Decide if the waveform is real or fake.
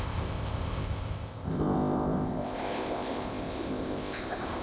fake